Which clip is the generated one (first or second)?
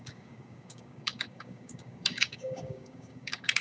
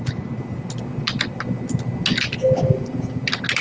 first